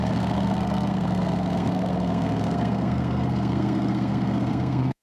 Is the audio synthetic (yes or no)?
yes